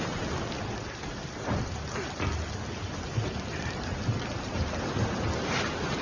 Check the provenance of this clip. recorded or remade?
recorded